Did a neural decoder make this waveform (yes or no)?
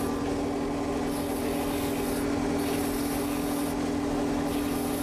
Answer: no